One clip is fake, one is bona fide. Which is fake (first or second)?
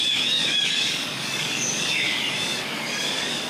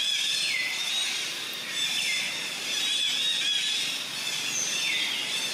first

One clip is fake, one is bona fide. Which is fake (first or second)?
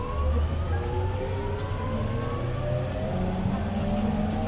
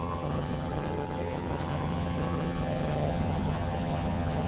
second